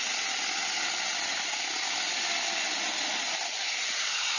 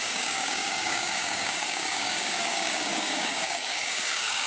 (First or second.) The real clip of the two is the first